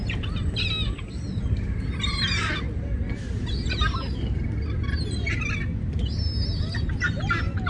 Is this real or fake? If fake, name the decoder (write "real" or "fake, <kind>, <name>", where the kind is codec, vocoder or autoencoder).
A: real